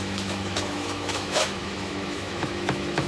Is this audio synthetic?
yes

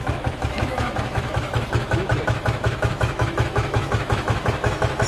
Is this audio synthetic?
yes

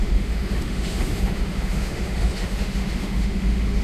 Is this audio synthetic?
yes